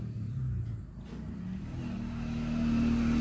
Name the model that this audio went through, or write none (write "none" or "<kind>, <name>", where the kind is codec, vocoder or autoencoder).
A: none